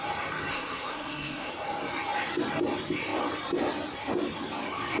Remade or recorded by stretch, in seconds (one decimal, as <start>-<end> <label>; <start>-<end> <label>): 0.0-0.5 recorded; 0.5-1.5 remade; 1.5-5.0 recorded